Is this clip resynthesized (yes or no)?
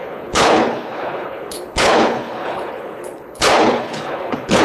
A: yes